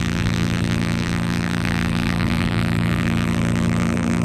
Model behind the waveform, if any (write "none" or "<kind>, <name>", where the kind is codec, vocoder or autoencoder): vocoder, BigVGAN v2